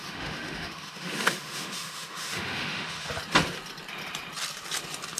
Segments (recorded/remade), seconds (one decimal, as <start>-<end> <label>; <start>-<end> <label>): 0.0-3.1 remade; 3.1-5.2 recorded